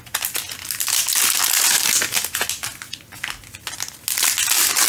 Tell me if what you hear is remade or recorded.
recorded